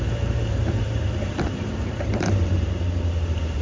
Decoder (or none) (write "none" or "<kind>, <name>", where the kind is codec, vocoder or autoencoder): vocoder, BigVGAN v2